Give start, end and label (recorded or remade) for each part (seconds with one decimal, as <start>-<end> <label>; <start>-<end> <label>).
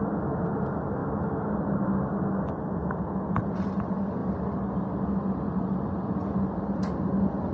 0.0-4.2 recorded; 4.2-4.8 remade; 4.8-6.2 recorded; 6.2-6.9 remade; 6.9-7.5 recorded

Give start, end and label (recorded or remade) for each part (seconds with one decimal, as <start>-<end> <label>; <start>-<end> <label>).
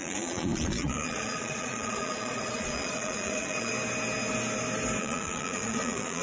0.0-3.7 remade; 3.7-5.0 recorded; 5.0-6.2 remade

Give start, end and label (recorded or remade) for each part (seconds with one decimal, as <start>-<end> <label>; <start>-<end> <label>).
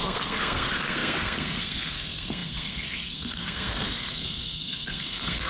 0.0-5.5 remade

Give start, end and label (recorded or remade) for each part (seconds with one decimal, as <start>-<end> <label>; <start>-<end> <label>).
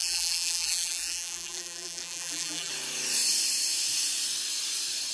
0.0-2.7 remade; 2.7-5.1 recorded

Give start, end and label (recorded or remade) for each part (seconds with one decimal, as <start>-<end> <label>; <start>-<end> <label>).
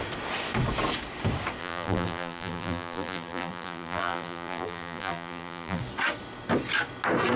0.0-1.6 recorded; 1.6-5.8 remade; 5.8-7.4 recorded